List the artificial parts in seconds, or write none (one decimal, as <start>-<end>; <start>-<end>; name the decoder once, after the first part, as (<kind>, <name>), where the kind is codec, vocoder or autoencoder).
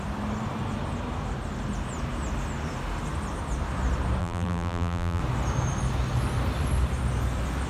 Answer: 4.2-5.2 (vocoder, BigVGAN v2)